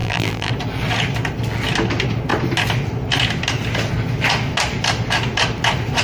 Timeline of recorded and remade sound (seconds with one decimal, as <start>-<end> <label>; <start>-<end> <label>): 0.0-0.5 remade; 0.5-6.0 recorded